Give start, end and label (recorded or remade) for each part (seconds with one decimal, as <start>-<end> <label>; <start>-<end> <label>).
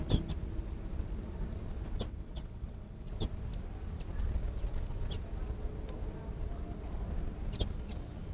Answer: 0.0-2.1 recorded; 2.1-3.1 remade; 3.1-8.3 recorded